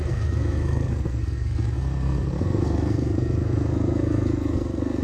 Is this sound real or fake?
fake